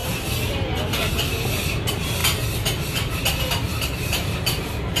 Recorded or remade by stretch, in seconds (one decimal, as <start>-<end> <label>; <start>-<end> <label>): 0.0-3.7 recorded; 3.7-5.0 remade